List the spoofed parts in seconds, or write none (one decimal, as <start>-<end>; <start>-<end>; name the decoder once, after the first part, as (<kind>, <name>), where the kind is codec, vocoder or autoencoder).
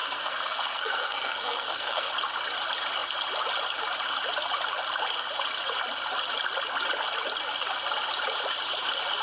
0.0-2.1 (codec, SNAC)